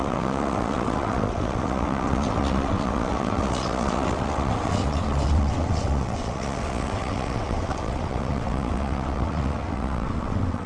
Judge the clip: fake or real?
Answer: fake